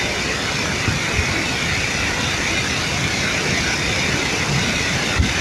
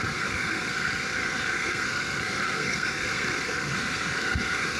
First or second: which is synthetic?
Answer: second